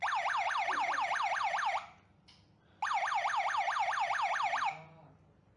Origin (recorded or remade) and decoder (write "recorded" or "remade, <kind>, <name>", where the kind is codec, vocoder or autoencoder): recorded